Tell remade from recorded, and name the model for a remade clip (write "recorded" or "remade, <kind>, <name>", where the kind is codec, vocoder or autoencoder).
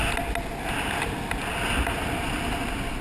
recorded